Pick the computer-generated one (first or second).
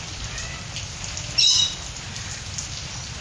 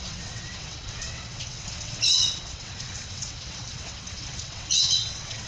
second